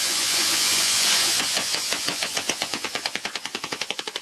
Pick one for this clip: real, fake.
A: fake